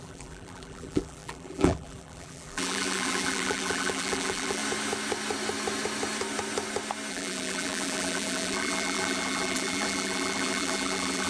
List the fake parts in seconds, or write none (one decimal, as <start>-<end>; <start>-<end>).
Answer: 0.0-4.6; 7.1-11.3